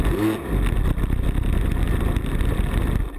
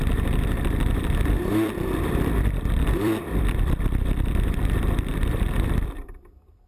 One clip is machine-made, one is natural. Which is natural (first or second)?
first